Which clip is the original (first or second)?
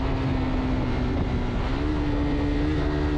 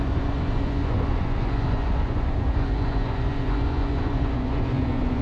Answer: first